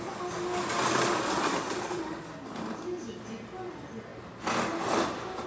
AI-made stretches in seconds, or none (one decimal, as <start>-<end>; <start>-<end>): none